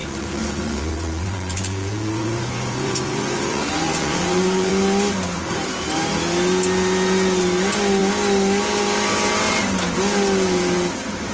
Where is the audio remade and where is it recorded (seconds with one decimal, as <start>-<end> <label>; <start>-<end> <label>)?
0.0-4.7 remade; 4.7-11.3 recorded